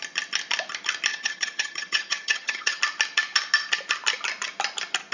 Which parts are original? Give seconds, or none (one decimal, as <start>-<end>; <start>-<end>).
0.0-1.1; 2.8-5.1